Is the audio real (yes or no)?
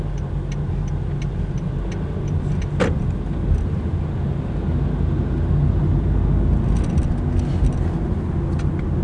yes